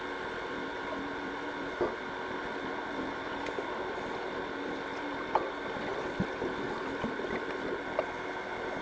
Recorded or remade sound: recorded